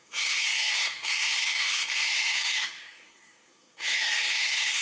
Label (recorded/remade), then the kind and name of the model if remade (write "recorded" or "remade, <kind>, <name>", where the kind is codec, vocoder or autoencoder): remade, codec, SNAC